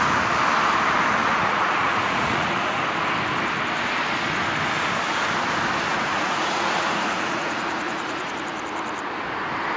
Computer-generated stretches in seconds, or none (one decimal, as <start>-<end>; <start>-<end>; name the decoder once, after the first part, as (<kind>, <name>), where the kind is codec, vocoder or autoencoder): 1.2-2.8 (vocoder, Vocos); 5.9-8.3